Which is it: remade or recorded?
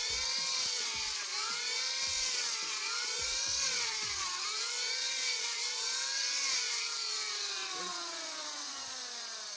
remade